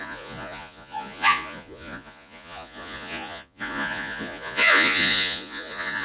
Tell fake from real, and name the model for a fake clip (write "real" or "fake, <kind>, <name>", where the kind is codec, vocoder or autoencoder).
fake, vocoder, Vocos